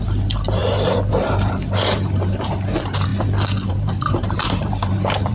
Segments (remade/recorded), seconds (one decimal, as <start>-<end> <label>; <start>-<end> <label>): 0.0-3.1 remade; 3.1-3.7 recorded; 3.7-5.3 remade